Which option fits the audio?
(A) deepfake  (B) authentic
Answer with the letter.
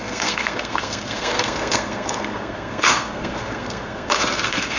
A